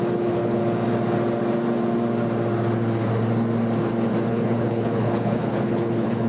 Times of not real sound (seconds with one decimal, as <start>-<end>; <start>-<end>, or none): 0.0-0.6; 4.3-6.3